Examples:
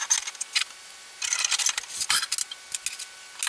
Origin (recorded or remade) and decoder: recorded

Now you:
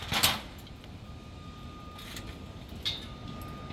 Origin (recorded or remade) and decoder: recorded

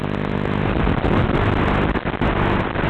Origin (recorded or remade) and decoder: recorded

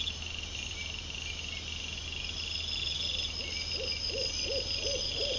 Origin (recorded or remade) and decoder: recorded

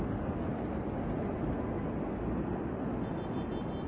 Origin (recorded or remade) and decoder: recorded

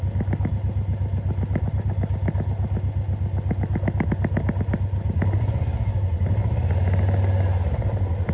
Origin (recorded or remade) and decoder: recorded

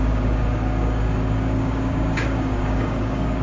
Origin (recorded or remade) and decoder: remade, codec, DAC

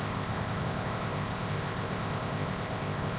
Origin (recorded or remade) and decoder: remade, codec, ZipCodec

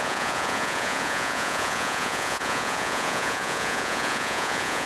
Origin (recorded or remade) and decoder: remade, vocoder, Vocos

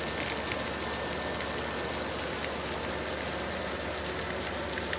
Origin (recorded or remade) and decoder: recorded